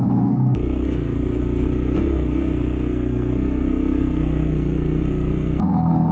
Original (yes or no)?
no